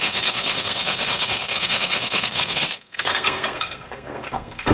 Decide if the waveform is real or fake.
fake